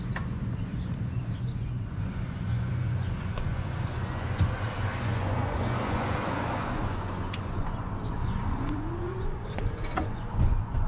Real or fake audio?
fake